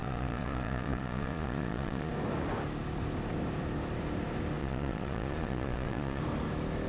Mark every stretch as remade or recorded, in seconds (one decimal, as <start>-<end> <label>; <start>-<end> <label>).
0.0-2.1 remade; 2.1-4.6 recorded; 4.6-6.2 remade; 6.2-6.9 recorded